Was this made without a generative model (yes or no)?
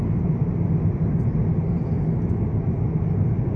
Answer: yes